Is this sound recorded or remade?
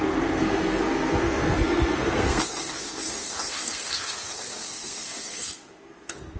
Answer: remade